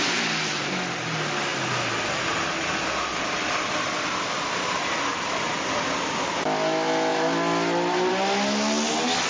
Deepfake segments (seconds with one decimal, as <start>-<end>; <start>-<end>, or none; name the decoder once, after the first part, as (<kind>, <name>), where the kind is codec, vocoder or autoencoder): none